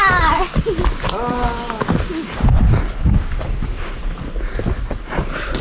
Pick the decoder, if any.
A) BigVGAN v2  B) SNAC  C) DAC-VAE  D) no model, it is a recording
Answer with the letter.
D